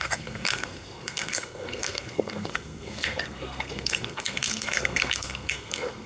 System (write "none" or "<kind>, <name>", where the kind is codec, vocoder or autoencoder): codec, SNAC